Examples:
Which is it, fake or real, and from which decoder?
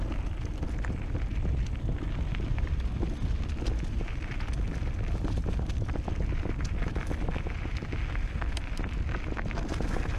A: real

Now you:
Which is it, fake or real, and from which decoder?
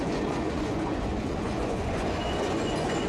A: fake, vocoder, Vocos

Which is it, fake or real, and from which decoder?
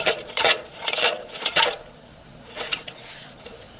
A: fake, vocoder, Vocos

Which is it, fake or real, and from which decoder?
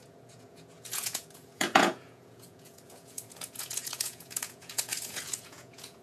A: fake, vocoder, Vocos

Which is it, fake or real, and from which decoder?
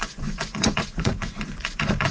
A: fake, vocoder, Vocos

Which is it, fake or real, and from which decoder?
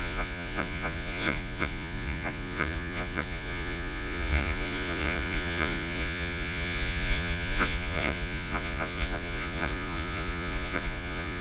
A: fake, vocoder, Vocos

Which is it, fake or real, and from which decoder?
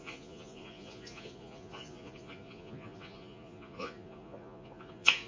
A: fake, vocoder, Vocos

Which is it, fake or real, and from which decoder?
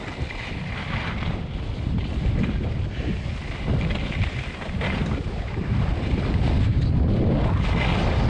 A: real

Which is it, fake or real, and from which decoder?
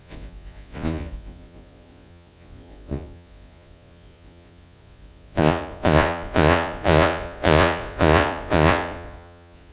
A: fake, vocoder, Vocos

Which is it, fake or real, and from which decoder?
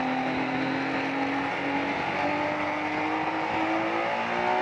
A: real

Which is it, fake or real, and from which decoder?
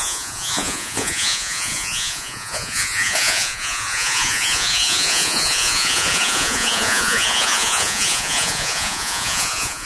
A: fake, vocoder, Vocos